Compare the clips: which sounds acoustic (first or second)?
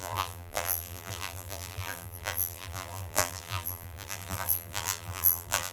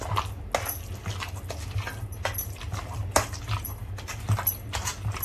second